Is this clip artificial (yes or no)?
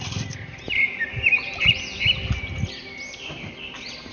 no